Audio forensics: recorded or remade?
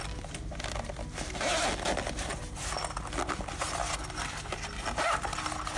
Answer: recorded